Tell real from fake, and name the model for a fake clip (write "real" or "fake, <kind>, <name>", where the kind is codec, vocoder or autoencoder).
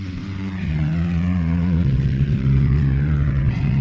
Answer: fake, vocoder, WaveNeXt